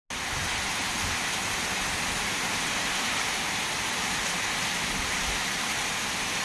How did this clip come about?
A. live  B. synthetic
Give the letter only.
A